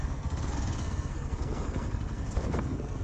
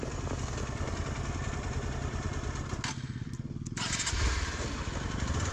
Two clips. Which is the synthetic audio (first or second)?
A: first